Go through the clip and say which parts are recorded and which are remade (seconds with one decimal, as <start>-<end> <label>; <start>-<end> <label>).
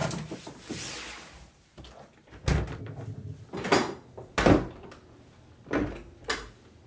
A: 0.0-6.9 recorded